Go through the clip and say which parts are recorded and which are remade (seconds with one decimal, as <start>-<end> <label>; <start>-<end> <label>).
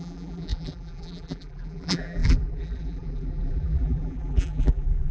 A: 0.0-5.1 remade